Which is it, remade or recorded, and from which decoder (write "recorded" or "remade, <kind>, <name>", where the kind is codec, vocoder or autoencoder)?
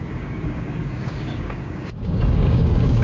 remade, codec, DAC